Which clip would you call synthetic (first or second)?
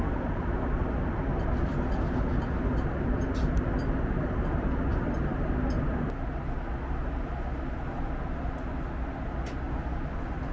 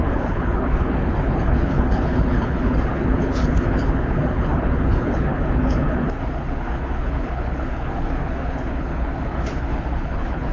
second